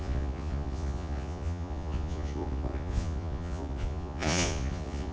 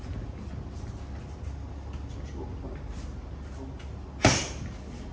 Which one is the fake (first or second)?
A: first